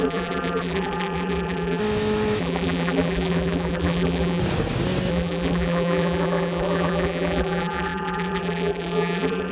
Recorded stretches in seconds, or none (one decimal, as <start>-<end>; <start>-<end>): 1.8-2.4; 4.4-5.1